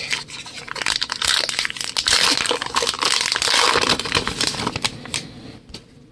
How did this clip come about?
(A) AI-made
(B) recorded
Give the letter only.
B